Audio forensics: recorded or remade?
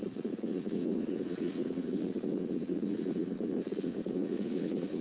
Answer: remade